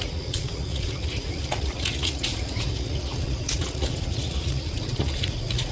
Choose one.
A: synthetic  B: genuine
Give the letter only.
A